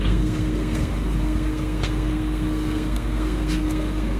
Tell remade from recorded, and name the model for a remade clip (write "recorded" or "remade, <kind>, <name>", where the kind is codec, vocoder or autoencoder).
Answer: remade, codec, SNAC